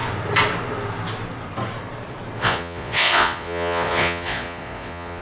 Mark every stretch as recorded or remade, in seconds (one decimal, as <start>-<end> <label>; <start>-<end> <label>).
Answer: 0.0-2.4 recorded; 2.4-5.2 remade